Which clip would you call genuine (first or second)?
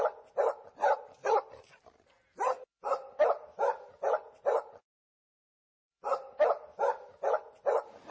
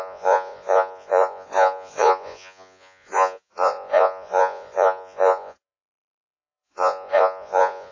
first